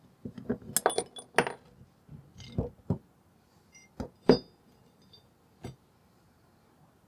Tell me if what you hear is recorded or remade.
recorded